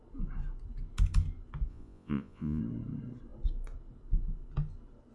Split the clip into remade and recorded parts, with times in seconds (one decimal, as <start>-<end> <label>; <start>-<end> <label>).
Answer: 0.0-1.7 recorded; 1.7-2.6 remade; 2.6-5.1 recorded